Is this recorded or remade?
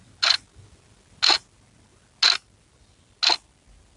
recorded